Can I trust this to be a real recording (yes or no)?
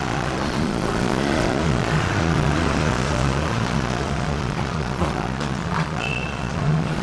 no